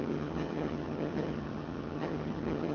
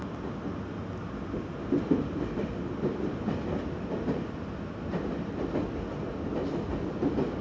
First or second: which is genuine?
second